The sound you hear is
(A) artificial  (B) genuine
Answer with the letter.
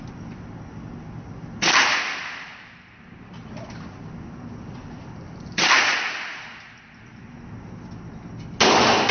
B